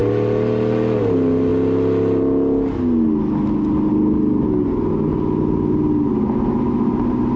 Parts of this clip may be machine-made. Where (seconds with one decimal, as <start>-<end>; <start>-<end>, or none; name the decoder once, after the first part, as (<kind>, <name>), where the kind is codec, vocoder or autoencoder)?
none